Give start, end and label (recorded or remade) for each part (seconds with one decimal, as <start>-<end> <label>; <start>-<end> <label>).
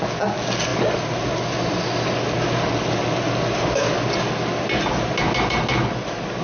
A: 0.0-6.4 recorded